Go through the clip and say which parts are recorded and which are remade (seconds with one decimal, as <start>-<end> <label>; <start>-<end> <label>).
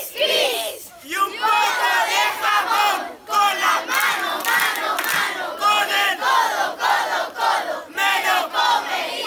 0.0-0.8 remade; 0.8-3.4 recorded; 3.4-9.3 remade